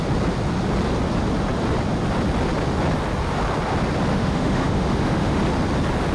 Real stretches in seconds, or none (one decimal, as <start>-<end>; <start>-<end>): 0.0-4.1; 5.4-6.1